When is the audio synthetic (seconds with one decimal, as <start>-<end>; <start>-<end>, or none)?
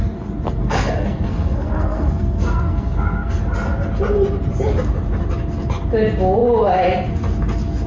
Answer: 0.6-3.4